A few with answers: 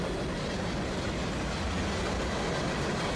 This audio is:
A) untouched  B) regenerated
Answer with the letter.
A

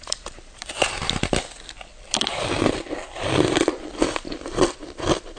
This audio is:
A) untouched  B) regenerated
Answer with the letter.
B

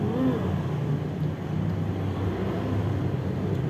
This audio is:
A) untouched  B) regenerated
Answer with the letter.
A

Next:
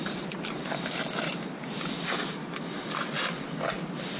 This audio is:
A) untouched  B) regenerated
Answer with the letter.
B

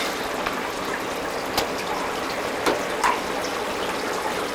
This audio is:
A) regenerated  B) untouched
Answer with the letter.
B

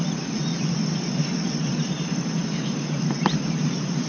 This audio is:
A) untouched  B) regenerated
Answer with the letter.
B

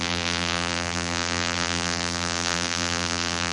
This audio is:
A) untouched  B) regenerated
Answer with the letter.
B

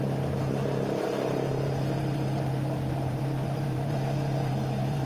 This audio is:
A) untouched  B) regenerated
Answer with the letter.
B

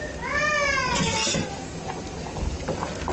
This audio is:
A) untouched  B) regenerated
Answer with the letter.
A